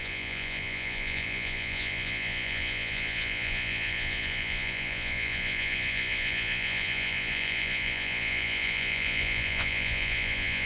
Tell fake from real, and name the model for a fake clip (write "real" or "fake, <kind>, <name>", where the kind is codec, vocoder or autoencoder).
fake, vocoder, Vocos